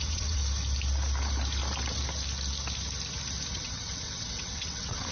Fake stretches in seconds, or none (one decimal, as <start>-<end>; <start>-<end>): 0.0-0.4; 3.5-5.1